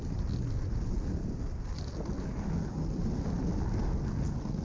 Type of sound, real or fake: real